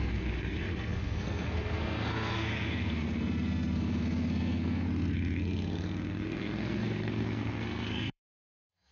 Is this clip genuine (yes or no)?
no